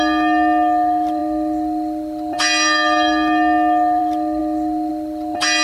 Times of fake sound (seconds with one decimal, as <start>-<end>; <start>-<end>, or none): none